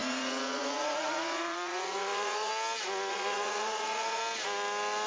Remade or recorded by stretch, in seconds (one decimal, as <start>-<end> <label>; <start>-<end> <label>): 0.0-2.5 remade; 2.5-3.1 recorded; 3.1-4.2 remade; 4.2-5.1 recorded